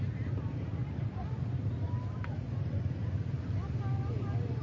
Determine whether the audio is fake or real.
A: real